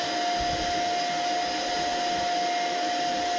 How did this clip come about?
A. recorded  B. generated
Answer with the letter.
A